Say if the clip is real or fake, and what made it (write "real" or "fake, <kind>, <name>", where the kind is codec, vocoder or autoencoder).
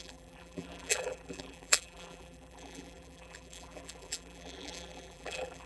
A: fake, vocoder, BigVGAN v2